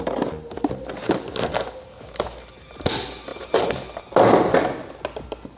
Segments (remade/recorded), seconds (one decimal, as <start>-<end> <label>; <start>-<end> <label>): 0.0-5.6 recorded